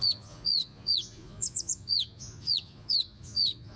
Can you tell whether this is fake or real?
fake